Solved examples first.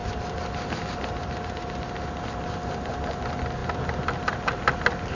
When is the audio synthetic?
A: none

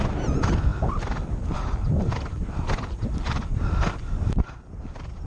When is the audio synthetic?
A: 0.7-3.9 (vocoder, BigVGAN v2)

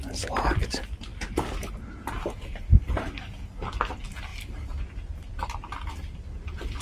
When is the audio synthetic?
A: 1.1-1.7 (vocoder, BigVGAN v2); 4.3-5.2

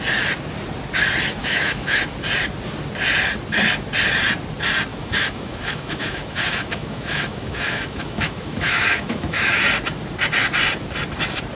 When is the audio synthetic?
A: 1.4-2.0 (autoencoder, DAC-VAE); 4.9-9.6

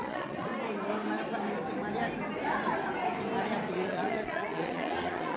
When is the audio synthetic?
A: 0.0-0.5 (vocoder, Vocos); 3.7-5.4

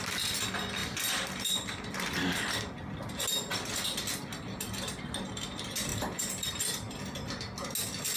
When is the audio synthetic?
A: 0.8-2.9 (vocoder, BigVGAN v2); 5.9-6.5